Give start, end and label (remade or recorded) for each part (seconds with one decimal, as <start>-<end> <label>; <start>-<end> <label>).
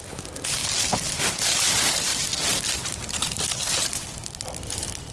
0.0-0.6 remade; 0.6-1.2 recorded; 1.2-5.1 remade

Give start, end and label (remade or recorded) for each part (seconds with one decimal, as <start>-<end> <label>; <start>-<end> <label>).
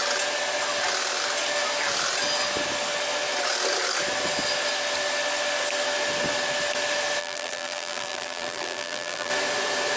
0.0-7.2 recorded; 7.2-9.3 remade; 9.3-10.0 recorded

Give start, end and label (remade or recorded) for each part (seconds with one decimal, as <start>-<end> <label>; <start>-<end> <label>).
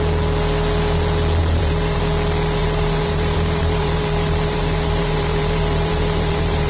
0.0-1.4 recorded; 1.4-2.0 remade; 2.0-2.6 recorded; 2.6-6.7 remade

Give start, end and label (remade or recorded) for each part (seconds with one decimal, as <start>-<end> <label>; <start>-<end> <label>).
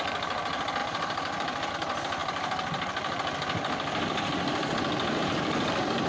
0.0-0.8 recorded; 0.8-1.7 remade; 1.7-6.1 recorded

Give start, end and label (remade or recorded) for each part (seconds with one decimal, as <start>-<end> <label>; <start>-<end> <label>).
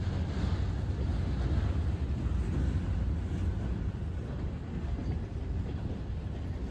0.0-5.0 recorded; 5.0-5.8 remade; 5.8-6.7 recorded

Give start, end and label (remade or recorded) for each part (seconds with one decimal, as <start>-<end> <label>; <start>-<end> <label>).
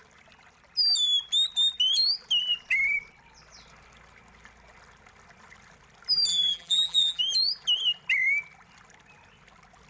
0.0-6.3 recorded; 6.3-7.2 remade; 7.2-9.9 recorded